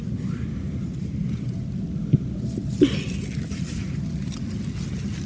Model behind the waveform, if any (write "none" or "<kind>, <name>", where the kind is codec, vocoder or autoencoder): none